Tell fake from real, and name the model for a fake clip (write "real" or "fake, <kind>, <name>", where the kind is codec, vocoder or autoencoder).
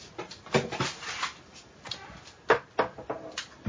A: real